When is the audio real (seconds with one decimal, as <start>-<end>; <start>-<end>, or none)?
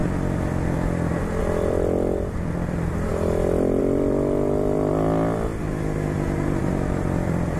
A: 0.0-1.4; 3.1-3.8; 4.9-6.6